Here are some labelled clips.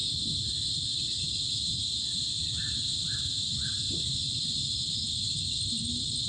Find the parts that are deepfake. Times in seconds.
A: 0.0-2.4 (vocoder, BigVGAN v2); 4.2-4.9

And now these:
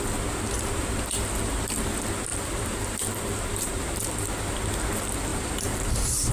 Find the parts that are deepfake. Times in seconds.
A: 2.3-4.3 (vocoder, BigVGAN v2); 5.3-6.3

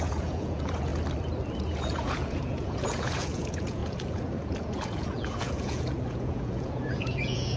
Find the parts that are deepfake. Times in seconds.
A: 0.0-0.9 (vocoder, Vocos); 1.6-7.6

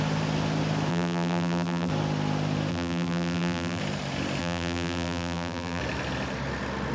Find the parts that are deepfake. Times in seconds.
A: 0.9-1.9 (vocoder, BigVGAN v2); 2.7-3.8; 4.4-5.8

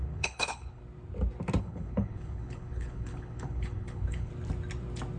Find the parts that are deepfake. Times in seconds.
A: 0.0-0.8 (codec, HILCodec); 1.6-4.3

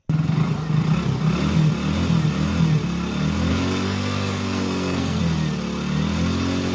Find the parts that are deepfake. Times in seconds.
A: 3.5-5.2 (codec, SNAC)

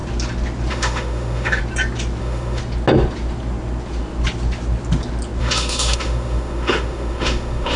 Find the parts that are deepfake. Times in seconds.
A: 0.7-1.6 (autoencoder, DAC-VAE); 2.2-2.6; 5.4-7.8

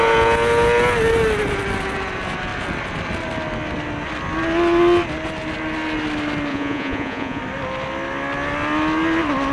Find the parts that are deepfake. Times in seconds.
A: 6.5-7.4 (vocoder, Vocos)